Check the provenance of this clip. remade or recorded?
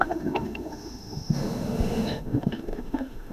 remade